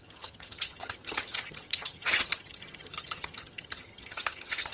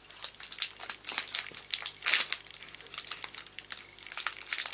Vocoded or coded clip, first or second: first